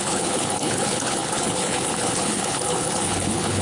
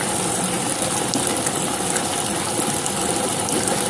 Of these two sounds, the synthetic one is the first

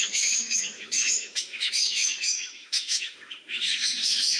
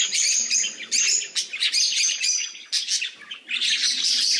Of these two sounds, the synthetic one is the first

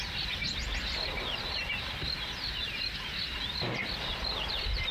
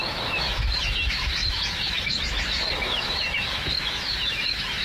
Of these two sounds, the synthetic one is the second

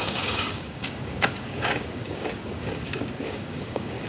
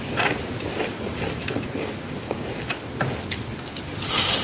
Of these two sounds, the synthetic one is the first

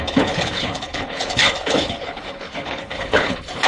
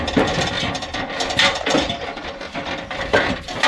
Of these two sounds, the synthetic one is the first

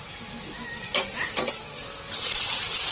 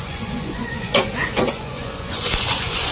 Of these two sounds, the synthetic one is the second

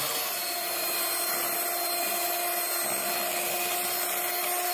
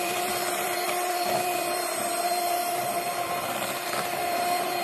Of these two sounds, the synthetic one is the second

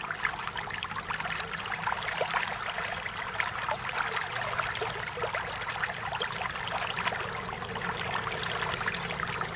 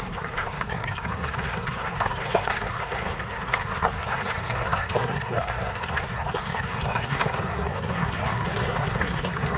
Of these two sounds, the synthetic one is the second